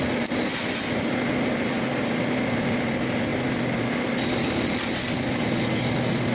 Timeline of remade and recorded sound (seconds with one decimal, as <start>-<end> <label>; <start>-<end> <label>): 0.0-6.3 recorded